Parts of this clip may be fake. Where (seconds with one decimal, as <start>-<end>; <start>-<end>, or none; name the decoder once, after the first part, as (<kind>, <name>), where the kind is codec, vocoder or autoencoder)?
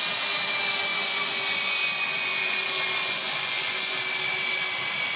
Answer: 0.9-4.0 (vocoder, Vocos)